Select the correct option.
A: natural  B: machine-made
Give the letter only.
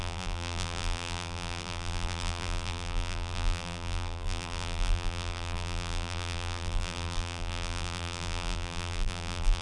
B